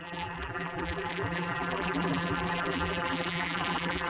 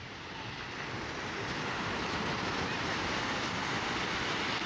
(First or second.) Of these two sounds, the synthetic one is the first